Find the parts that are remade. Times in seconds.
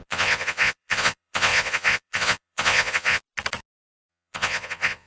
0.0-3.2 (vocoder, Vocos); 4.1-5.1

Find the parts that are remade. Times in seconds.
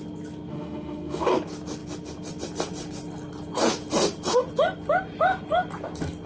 0.5-1.3 (autoencoder, DAC-VAE)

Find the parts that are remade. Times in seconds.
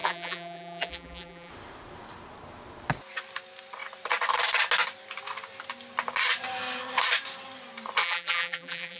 0.0-1.5 (vocoder, BigVGAN v2); 8.0-9.0